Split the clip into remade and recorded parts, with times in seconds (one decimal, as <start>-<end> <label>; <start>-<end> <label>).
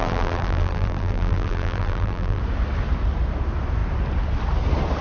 0.0-2.4 remade; 2.4-5.0 recorded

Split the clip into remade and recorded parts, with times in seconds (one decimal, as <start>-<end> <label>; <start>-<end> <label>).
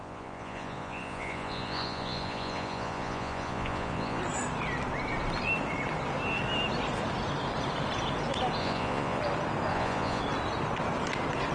0.0-4.2 remade; 4.2-8.6 recorded; 8.6-9.2 remade; 9.2-9.7 recorded; 9.7-10.2 remade; 10.2-11.5 recorded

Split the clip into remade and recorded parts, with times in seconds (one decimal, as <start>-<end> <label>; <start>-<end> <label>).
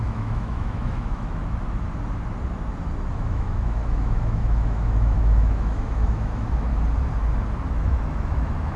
0.0-1.4 remade; 1.4-3.1 recorded; 3.1-6.7 remade; 6.7-7.7 recorded; 7.7-8.8 remade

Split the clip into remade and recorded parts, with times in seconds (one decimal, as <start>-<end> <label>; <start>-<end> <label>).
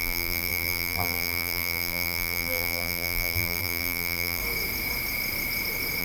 0.0-4.4 remade; 4.4-6.0 recorded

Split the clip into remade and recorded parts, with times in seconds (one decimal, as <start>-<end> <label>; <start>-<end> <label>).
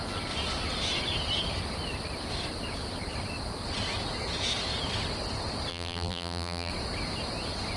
0.0-5.7 recorded; 5.7-6.7 remade; 6.7-7.8 recorded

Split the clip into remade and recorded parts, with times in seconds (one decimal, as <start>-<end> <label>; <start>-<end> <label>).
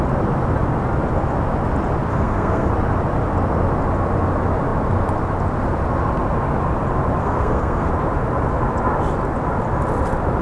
0.0-2.1 recorded; 2.1-2.7 remade; 2.7-7.2 recorded; 7.2-7.9 remade; 7.9-10.4 recorded